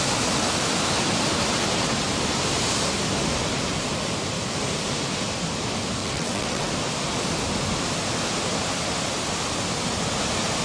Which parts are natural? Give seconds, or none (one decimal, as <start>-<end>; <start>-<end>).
0.0-6.0; 6.7-10.6